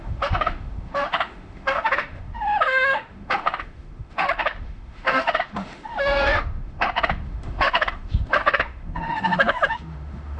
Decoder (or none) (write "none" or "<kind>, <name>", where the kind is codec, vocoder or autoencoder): autoencoder, DAC-VAE